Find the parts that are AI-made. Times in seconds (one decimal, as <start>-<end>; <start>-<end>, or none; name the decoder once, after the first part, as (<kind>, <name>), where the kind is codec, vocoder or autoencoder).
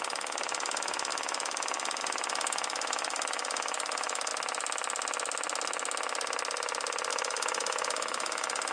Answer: 0.0-4.3 (autoencoder, DAC-VAE); 7.1-8.7